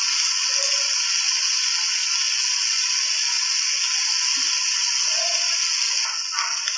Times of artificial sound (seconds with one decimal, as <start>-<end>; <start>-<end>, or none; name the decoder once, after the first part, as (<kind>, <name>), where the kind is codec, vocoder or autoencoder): none

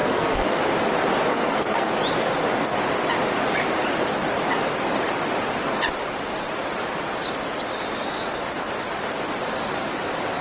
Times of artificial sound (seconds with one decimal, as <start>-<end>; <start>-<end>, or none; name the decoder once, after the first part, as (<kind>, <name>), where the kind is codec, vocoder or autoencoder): 0.0-0.6 (codec, SNAC); 1.3-1.9

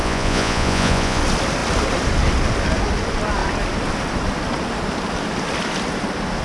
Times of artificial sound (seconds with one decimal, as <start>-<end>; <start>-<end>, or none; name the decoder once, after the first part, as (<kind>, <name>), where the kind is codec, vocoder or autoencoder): 0.0-1.2 (vocoder, Vocos)

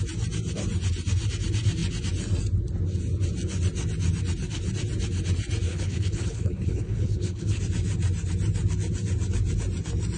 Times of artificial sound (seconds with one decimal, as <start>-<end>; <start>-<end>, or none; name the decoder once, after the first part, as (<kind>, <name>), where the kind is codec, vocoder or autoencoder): 5.7-7.6 (codec, HILCodec)